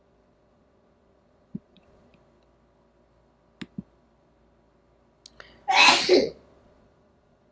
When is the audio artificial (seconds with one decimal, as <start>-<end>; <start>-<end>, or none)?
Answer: 0.0-2.1; 6.1-7.5